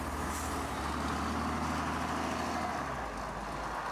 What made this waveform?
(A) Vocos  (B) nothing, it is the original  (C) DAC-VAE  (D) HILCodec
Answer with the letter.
B